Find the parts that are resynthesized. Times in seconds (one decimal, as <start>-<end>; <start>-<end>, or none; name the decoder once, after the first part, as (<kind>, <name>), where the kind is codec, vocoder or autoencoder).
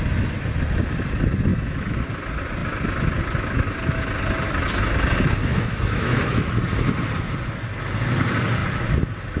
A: 1.5-2.0 (autoencoder, DAC-VAE); 5.5-6.5